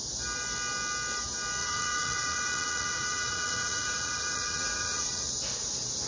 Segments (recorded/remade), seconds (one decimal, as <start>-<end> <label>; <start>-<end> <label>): 0.0-1.6 recorded; 1.6-5.3 remade; 5.3-6.1 recorded

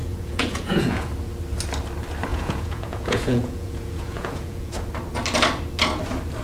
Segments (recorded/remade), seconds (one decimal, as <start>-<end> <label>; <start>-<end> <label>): 0.0-1.1 remade; 1.1-2.3 recorded; 2.3-4.7 remade; 4.7-6.4 recorded

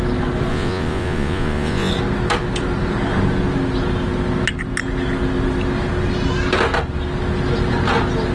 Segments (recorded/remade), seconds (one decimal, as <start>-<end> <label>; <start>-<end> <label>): 0.0-0.5 recorded; 0.5-1.9 remade; 1.9-8.3 recorded

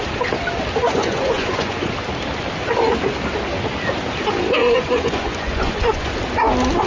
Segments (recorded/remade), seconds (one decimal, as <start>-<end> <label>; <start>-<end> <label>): 0.0-0.8 recorded; 0.8-1.9 remade; 1.9-4.6 recorded; 4.6-6.1 remade; 6.1-6.9 recorded

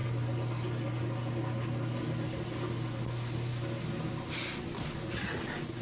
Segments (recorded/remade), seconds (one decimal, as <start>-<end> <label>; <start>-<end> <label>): 0.0-5.8 recorded

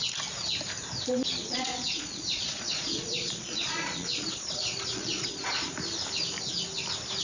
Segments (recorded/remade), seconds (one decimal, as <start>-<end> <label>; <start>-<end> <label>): 0.0-1.4 recorded; 1.4-5.7 remade; 5.7-7.2 recorded

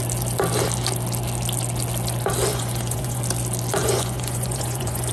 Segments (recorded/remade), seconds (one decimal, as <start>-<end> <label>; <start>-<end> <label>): 0.0-2.5 recorded; 2.5-3.2 remade; 3.2-3.8 recorded; 3.8-5.1 remade